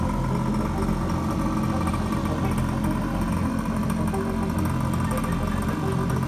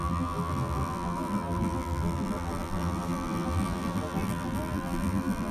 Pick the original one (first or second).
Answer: first